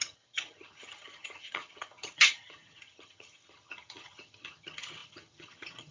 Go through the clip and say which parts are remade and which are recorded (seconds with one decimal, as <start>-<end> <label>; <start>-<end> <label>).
0.0-5.9 remade